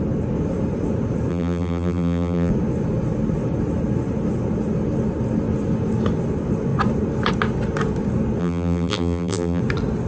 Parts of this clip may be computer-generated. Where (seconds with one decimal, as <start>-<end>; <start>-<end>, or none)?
1.3-2.5; 8.4-9.6